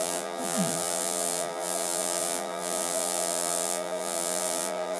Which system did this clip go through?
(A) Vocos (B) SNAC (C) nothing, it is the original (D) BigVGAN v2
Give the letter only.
D